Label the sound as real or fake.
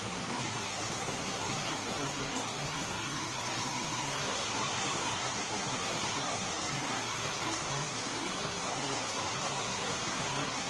fake